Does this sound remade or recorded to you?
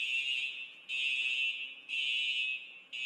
recorded